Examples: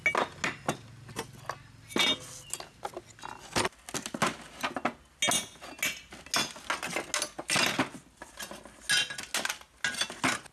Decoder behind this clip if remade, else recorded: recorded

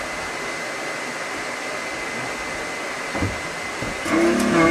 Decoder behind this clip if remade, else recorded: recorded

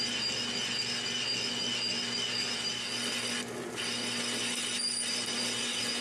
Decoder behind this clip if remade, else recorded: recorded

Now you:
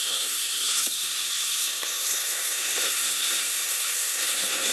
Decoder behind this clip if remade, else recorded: remade, codec, SNAC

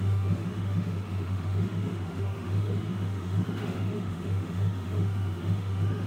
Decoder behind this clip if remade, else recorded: remade, autoencoder, DAC-VAE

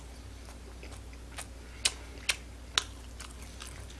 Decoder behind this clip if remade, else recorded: recorded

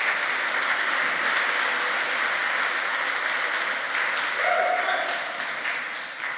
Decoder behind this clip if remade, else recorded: recorded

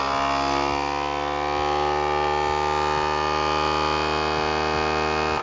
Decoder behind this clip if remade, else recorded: recorded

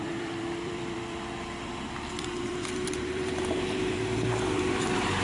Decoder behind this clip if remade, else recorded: remade, vocoder, BigVGAN v2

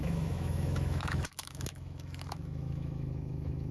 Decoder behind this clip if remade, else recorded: remade, autoencoder, DAC-VAE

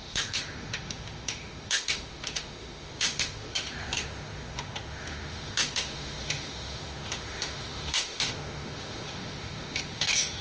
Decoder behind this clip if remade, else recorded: remade, autoencoder, DAC-VAE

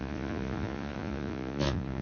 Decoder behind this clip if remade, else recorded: remade, vocoder, Vocos